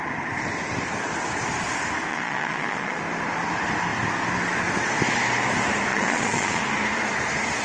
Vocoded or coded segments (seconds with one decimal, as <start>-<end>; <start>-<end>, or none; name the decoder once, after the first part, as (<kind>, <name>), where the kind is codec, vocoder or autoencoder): 2.1-3.0 (vocoder, Vocos); 5.9-6.6